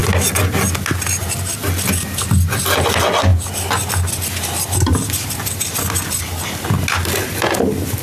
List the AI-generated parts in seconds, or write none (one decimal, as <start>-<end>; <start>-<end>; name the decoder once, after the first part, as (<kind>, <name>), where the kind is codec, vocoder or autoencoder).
none